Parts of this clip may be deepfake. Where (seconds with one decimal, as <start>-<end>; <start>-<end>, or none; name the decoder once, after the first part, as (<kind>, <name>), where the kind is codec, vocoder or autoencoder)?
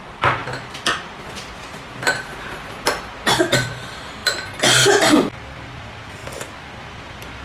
0.0-2.3 (vocoder, BigVGAN v2); 3.4-4.2; 5.8-6.2; 6.9-7.4